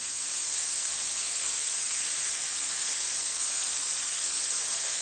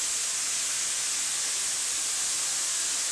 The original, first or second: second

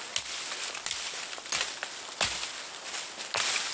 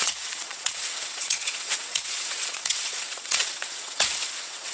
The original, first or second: first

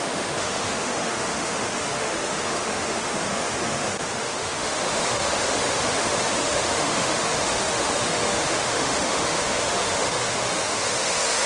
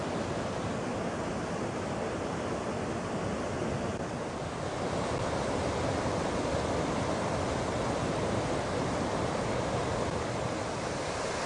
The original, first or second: second